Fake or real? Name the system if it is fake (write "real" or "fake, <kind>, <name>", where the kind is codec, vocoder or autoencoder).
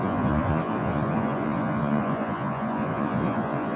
fake, vocoder, Vocos